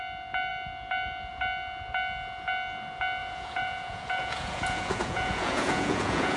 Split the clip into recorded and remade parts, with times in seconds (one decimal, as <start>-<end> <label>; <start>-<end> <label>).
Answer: 0.0-3.2 recorded; 3.2-6.4 remade